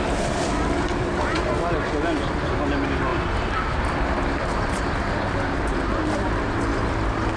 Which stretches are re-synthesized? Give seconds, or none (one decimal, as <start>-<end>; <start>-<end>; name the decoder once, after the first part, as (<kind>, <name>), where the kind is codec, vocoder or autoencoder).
none